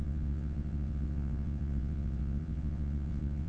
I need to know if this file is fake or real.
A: fake